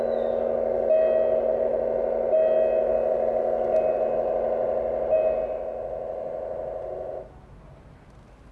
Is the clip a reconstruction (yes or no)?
no